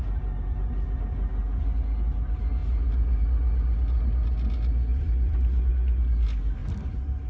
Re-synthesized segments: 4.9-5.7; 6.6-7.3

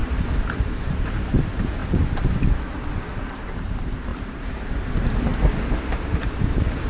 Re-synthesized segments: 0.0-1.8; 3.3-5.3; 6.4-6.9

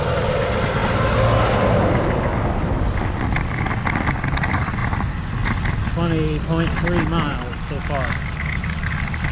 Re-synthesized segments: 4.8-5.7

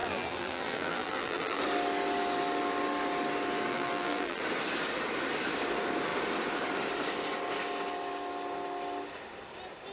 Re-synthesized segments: 0.0-1.6; 3.7-4.4

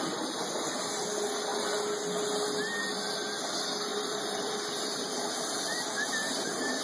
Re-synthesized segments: 3.9-6.8

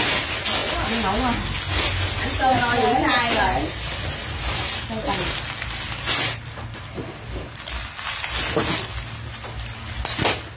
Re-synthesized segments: none

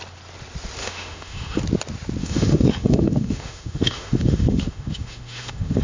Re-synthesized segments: 0.8-1.6; 2.2-5.8